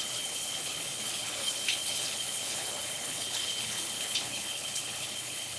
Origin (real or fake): fake